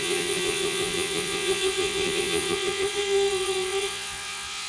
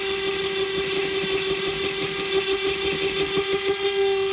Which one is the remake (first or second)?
first